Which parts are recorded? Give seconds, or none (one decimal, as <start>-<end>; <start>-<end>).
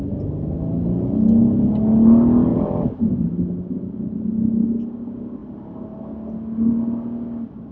0.0-2.5; 3.3-7.7